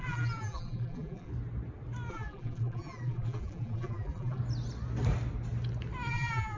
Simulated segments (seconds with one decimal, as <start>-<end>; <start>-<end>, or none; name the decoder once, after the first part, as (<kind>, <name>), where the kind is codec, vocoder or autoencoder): 0.0-1.3 (vocoder, BigVGAN v2); 2.1-4.4; 6.1-6.6